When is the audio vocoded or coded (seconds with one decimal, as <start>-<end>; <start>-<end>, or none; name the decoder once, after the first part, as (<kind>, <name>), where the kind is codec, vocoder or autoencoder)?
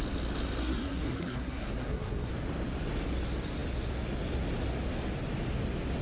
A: 0.6-2.3 (codec, SNAC)